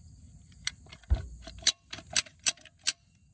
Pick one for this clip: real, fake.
real